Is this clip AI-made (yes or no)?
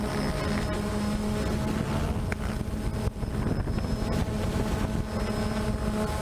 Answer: no